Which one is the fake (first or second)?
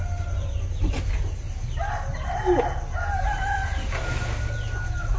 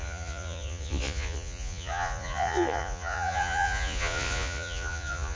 second